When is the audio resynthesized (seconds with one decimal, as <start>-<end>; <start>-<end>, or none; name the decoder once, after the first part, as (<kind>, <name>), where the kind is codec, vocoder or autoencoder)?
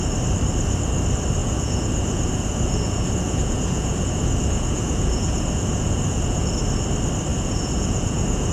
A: 1.4-6.5 (vocoder, Vocos); 7.3-8.5